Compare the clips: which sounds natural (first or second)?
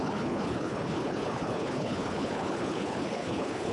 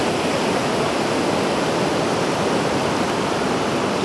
second